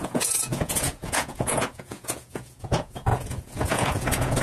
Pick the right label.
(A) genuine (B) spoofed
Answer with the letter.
B